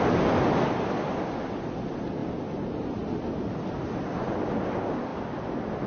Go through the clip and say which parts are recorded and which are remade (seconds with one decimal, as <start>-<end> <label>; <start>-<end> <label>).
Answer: 0.0-5.9 recorded